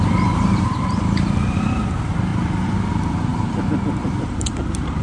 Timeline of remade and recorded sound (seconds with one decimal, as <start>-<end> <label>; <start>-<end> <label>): 0.0-2.3 remade; 2.3-2.9 recorded; 2.9-5.0 remade